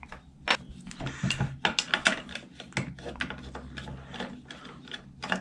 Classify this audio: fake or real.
real